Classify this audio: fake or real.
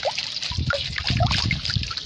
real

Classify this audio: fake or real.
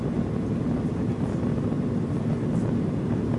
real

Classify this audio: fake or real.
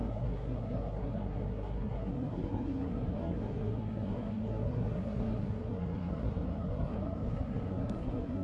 fake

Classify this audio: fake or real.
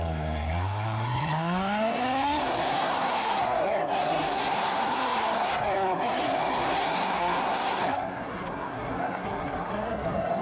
fake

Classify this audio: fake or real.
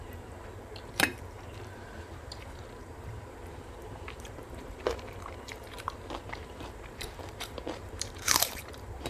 fake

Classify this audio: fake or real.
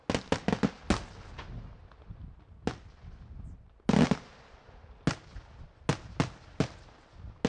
real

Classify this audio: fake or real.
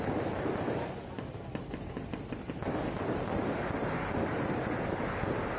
real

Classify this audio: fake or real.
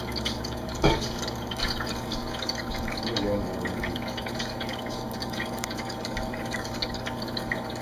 fake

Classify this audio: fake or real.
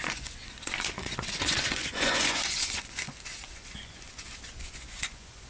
fake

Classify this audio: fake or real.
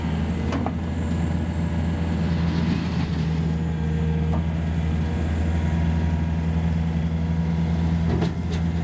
real